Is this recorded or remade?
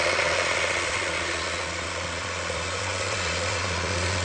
remade